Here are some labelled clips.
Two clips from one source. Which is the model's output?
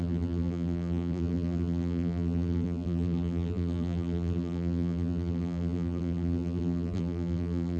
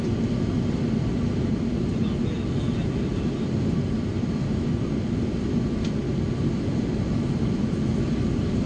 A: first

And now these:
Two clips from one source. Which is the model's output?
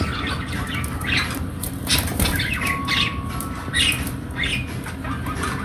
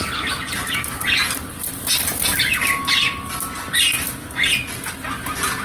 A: first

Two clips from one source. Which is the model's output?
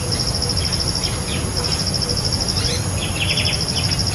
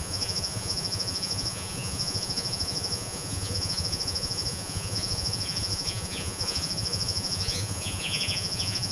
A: second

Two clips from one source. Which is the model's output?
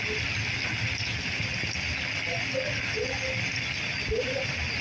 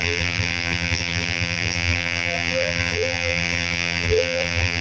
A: second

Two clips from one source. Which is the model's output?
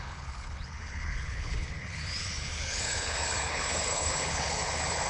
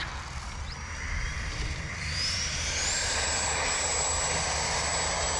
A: first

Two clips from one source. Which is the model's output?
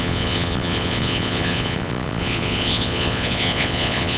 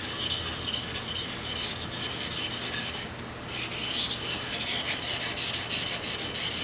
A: first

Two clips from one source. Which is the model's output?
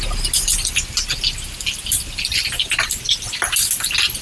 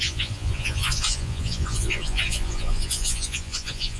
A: second